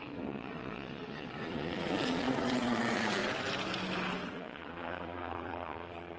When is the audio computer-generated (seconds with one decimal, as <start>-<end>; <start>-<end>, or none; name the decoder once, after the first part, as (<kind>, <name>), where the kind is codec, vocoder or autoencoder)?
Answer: 0.0-3.2 (vocoder, Vocos); 4.3-6.2